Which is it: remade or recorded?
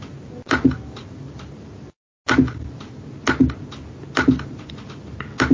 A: recorded